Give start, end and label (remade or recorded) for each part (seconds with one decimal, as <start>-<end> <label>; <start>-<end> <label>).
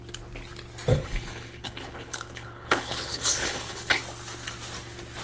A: 0.0-0.9 recorded; 0.9-4.0 remade; 4.0-5.2 recorded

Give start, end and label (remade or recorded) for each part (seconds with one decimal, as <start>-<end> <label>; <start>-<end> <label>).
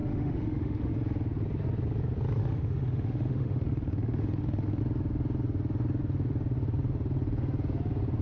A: 0.0-0.9 remade; 0.9-2.4 recorded; 2.4-4.8 remade; 4.8-8.2 recorded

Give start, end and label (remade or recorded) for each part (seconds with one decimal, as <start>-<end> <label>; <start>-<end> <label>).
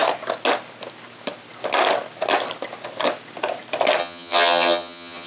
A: 0.0-4.0 recorded; 4.0-5.3 remade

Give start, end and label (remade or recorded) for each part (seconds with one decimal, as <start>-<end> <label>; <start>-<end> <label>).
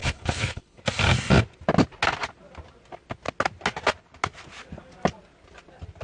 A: 0.0-0.8 remade; 0.8-6.0 recorded